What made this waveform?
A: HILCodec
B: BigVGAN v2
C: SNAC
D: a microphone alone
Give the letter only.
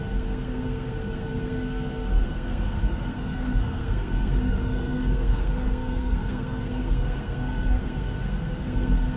C